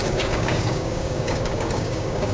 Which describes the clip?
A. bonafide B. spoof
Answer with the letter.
B